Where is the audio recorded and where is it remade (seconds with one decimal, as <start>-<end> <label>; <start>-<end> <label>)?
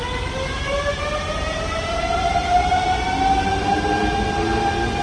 0.0-5.0 recorded